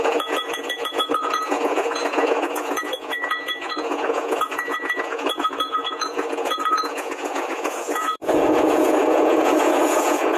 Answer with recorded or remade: remade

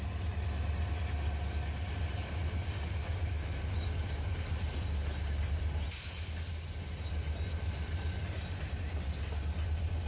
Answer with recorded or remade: recorded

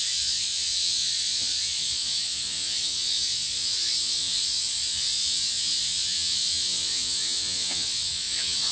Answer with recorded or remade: remade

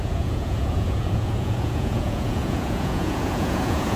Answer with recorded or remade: remade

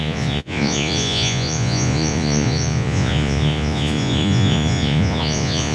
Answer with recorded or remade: remade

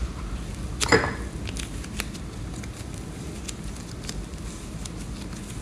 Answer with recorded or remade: recorded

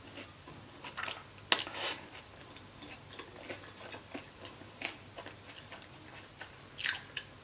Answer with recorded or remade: recorded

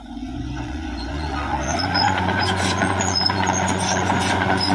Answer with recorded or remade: remade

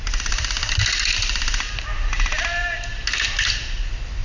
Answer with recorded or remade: recorded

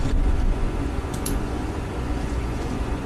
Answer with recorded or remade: remade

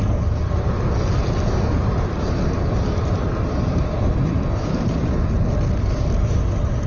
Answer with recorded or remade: recorded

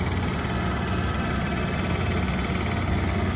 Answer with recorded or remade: recorded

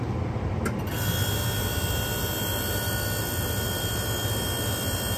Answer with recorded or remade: recorded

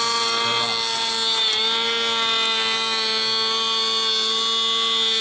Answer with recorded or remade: recorded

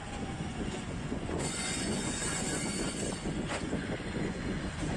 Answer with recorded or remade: remade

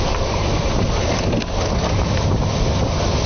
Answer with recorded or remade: recorded